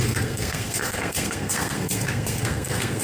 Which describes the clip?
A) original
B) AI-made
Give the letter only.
B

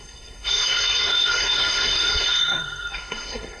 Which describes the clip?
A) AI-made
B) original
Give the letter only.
A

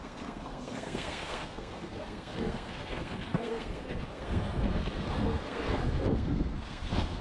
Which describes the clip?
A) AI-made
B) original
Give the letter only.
A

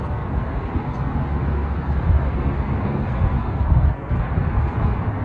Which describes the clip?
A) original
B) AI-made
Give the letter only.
B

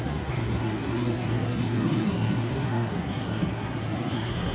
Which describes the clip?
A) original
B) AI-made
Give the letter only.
B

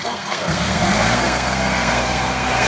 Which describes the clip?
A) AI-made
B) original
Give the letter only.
A